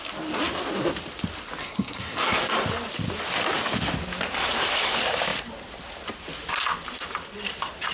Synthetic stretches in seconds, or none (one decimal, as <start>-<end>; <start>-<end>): 1.6-2.4